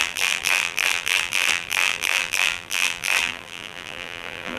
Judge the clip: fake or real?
fake